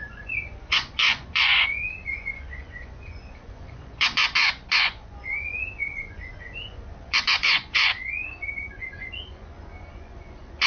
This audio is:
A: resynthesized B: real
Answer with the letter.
A